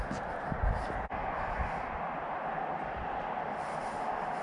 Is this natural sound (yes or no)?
yes